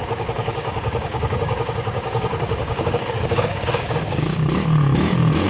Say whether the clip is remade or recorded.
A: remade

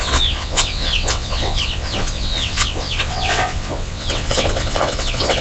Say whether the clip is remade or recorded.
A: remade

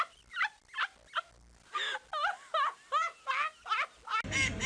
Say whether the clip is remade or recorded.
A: recorded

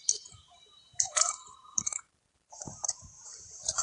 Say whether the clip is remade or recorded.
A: remade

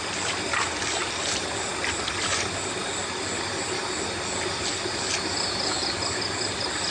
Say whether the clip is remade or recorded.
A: recorded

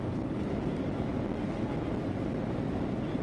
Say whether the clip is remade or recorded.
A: recorded